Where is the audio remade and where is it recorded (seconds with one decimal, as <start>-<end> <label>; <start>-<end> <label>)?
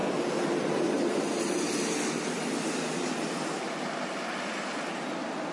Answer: 0.0-3.3 remade; 3.3-5.5 recorded